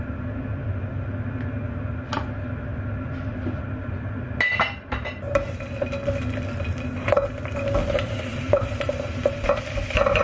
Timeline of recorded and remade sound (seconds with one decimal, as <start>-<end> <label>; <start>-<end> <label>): 0.0-2.7 recorded; 2.7-3.6 remade; 3.6-7.8 recorded; 7.8-9.5 remade; 9.5-10.2 recorded